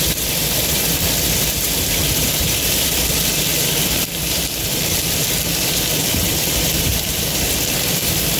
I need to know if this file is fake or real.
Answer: fake